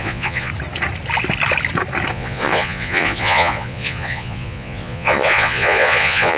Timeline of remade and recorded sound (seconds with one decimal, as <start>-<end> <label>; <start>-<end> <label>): 0.0-0.5 remade; 0.5-2.1 recorded; 2.1-6.4 remade